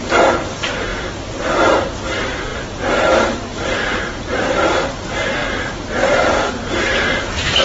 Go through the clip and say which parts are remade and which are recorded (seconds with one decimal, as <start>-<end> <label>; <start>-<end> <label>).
0.0-7.6 recorded